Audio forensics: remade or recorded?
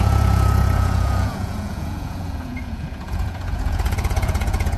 remade